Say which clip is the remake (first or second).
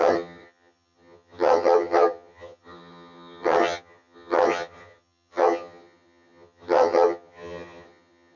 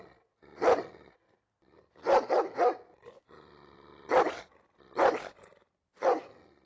first